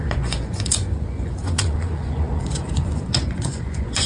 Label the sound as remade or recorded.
remade